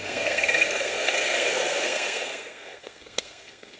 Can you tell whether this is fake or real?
fake